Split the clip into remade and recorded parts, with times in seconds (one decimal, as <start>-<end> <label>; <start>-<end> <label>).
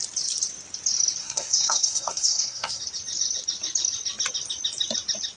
0.0-1.2 recorded; 1.2-2.8 remade; 2.8-5.4 recorded